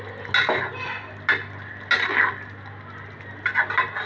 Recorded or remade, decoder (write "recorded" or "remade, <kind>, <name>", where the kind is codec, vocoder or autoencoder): recorded